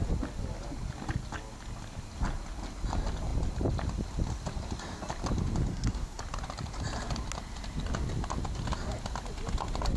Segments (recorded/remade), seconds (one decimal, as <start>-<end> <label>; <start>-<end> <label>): 0.0-5.7 recorded; 5.7-6.2 remade; 6.2-10.0 recorded